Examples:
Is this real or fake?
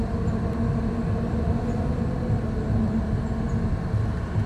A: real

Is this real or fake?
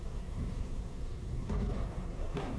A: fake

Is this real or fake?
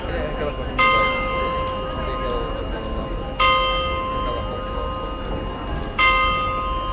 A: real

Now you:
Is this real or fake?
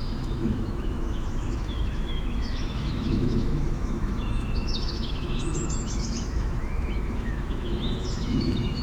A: fake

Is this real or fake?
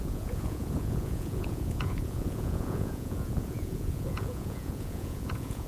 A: fake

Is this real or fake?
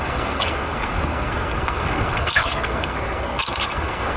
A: fake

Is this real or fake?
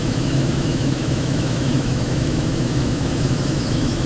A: fake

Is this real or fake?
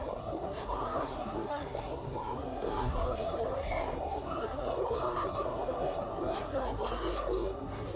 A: fake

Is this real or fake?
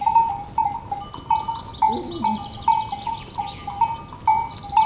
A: real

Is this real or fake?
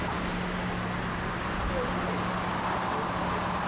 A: real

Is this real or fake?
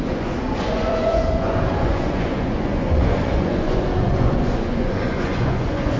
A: fake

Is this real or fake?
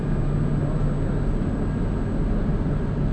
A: real